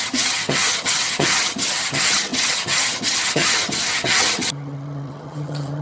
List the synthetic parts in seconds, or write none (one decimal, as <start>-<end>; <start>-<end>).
0.0-5.8